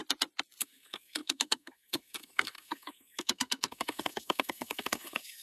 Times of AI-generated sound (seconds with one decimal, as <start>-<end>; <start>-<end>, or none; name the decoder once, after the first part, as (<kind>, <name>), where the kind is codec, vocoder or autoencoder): 0.6-5.4 (codec, SNAC)